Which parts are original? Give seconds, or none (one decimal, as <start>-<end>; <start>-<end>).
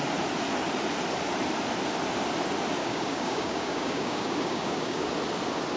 0.0-2.8; 5.1-5.8